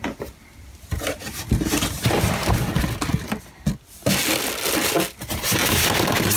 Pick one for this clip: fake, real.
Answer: real